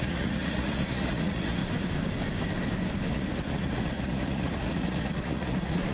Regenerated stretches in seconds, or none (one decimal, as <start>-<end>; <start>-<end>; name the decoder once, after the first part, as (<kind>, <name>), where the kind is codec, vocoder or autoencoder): 0.0-1.6 (vocoder, Vocos); 3.1-5.9